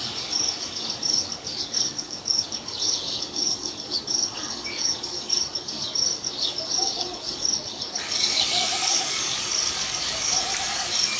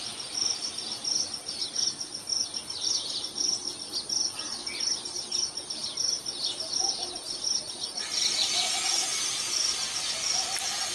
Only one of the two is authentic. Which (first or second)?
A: second